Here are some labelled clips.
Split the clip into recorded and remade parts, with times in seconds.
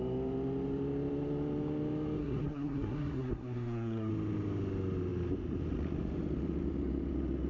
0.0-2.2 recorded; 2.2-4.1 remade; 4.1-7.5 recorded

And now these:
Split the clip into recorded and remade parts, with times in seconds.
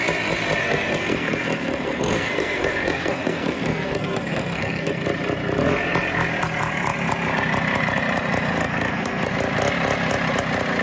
0.0-0.6 recorded; 0.6-5.0 remade; 5.0-8.6 recorded; 8.6-9.3 remade; 9.3-10.8 recorded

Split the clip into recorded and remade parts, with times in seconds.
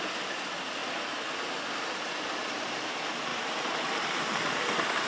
0.0-3.3 recorded; 3.3-4.6 remade; 4.6-5.1 recorded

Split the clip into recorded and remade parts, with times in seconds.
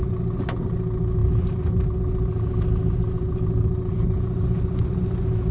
0.0-5.5 recorded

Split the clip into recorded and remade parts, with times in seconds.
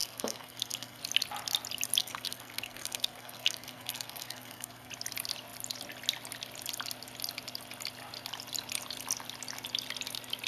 0.0-1.0 remade; 1.0-2.0 recorded; 2.0-4.9 remade; 4.9-10.5 recorded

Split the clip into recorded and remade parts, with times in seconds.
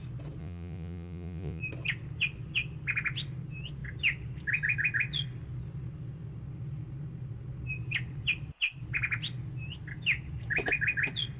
0.0-0.4 recorded; 0.4-1.6 remade; 1.6-11.4 recorded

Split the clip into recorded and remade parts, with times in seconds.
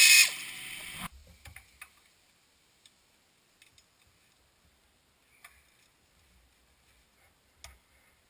0.0-8.3 recorded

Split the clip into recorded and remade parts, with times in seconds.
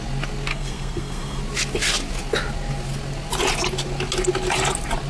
0.0-0.5 recorded; 0.5-1.4 remade; 1.4-5.1 recorded